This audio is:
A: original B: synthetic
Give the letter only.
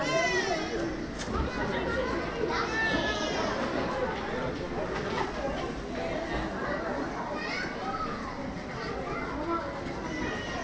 A